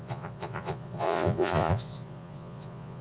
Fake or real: fake